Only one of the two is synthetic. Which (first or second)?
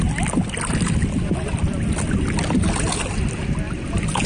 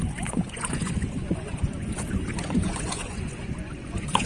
second